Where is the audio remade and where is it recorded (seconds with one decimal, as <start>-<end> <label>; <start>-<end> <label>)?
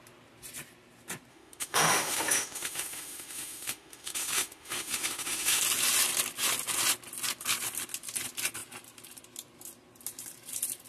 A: 0.0-1.3 recorded; 1.3-5.6 remade; 5.6-10.9 recorded